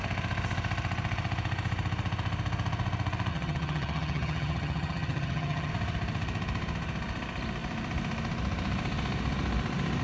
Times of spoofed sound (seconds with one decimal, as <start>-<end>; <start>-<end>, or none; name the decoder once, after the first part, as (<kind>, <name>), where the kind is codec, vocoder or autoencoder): 3.3-5.7 (vocoder, HiFi-GAN)